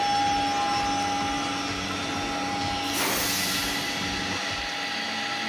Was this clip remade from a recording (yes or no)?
no